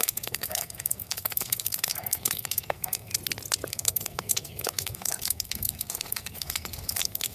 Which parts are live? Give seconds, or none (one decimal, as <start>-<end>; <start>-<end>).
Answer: 3.1-3.7